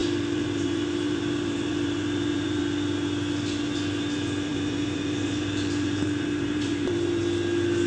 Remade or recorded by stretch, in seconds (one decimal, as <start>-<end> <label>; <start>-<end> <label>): 0.0-2.6 remade; 2.6-4.5 recorded; 4.5-7.2 remade; 7.2-7.9 recorded

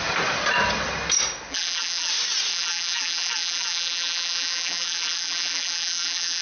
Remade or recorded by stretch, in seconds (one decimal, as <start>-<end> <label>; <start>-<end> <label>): 0.0-1.5 recorded; 1.5-2.1 remade; 2.1-2.5 recorded; 2.5-6.4 remade